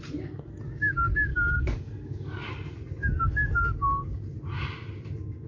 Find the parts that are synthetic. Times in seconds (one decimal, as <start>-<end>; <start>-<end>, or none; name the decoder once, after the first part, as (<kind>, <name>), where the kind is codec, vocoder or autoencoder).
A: 1.3-2.5 (codec, DAC)